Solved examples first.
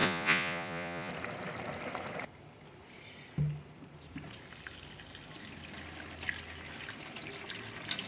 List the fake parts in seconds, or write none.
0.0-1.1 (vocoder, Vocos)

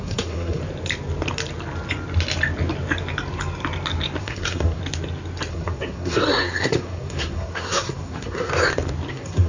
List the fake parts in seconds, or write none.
0.0-0.6 (codec, SNAC); 4.2-4.8; 5.5-8.5; 9.1-9.5

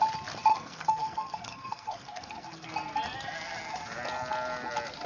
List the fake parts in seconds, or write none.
0.5-2.7 (codec, SNAC)

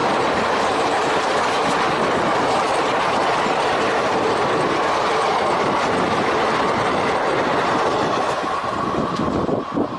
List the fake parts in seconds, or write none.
none

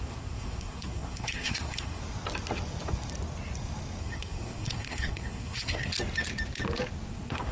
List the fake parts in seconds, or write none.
0.0-2.0 (codec, SNAC); 4.0-5.9; 7.1-7.5